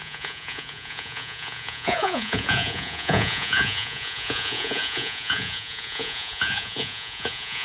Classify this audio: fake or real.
fake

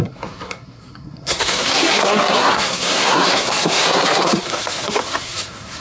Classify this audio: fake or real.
fake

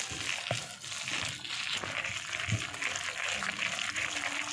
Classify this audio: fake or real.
real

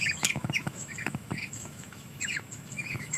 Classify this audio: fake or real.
fake